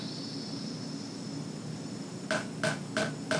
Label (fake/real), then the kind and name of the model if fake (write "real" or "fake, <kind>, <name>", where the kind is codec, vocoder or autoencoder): real